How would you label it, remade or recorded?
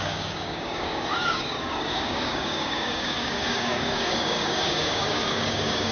remade